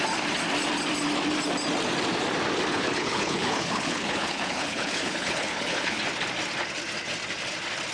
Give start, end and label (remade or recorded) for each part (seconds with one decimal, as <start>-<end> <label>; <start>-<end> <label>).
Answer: 0.0-2.7 recorded; 2.7-6.0 remade; 6.0-7.9 recorded